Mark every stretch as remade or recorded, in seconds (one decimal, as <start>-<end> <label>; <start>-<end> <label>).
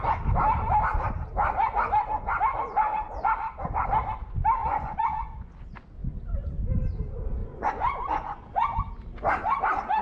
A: 0.0-4.6 recorded; 4.6-5.5 remade; 5.5-7.4 recorded; 7.4-8.9 remade; 8.9-10.0 recorded